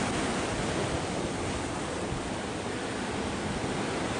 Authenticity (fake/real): real